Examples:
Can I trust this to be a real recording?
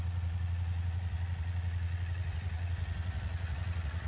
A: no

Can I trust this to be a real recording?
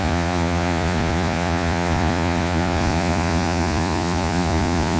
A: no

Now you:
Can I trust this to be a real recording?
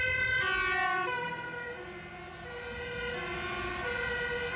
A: yes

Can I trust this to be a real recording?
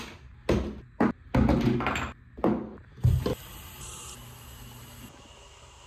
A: yes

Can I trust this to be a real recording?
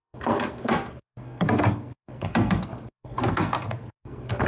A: no